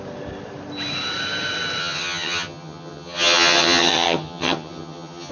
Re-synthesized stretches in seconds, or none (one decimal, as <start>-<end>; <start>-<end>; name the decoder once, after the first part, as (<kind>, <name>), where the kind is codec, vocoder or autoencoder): 1.8-5.3 (vocoder, HiFi-GAN)